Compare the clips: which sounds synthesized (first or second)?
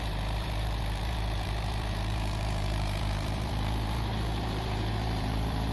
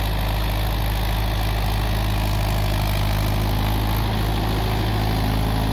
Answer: first